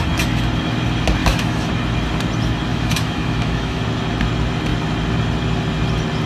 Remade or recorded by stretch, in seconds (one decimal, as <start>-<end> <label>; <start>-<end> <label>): 0.0-1.2 recorded; 1.2-1.7 remade; 1.7-2.7 recorded; 2.7-3.8 remade; 3.8-6.3 recorded